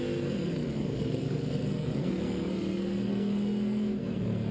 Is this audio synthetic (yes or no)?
yes